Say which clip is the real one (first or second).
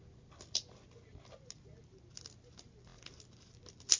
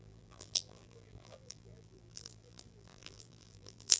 first